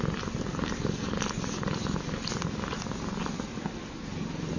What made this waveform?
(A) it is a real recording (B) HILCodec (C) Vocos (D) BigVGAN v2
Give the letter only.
A